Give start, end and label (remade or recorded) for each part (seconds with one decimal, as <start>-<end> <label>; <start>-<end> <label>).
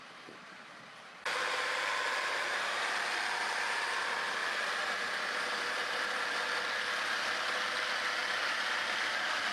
0.0-9.5 recorded